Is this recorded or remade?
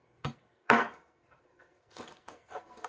remade